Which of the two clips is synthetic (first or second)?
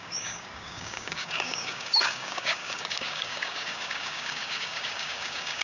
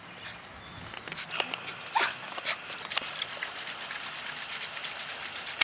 first